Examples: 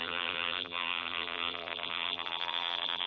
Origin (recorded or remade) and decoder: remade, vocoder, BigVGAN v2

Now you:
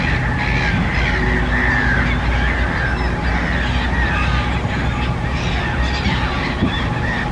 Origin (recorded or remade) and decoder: recorded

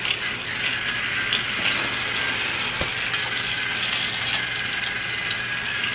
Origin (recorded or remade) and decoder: recorded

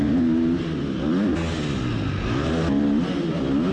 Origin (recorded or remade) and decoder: recorded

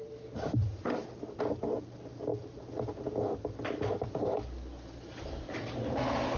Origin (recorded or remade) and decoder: recorded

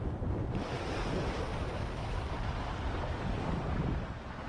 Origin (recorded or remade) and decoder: remade, vocoder, BigVGAN v2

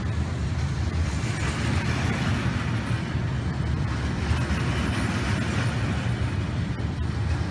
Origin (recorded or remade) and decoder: recorded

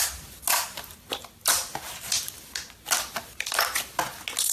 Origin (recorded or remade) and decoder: recorded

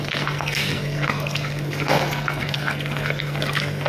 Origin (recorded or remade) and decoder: remade, codec, SNAC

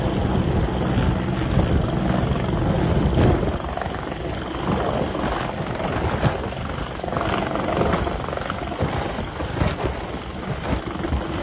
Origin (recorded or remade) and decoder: recorded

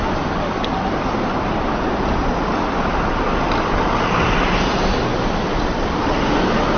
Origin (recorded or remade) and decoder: recorded